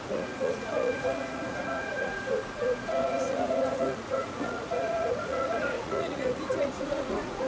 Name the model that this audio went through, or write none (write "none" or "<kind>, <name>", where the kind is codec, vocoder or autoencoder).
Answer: vocoder, Vocos